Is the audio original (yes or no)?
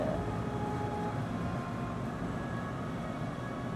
yes